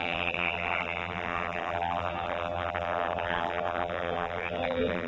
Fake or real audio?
fake